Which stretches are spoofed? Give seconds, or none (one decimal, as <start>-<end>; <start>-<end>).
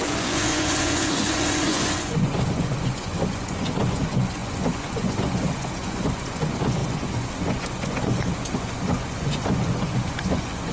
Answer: 0.0-10.7